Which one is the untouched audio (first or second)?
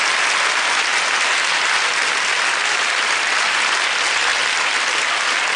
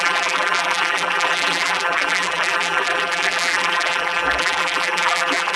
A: first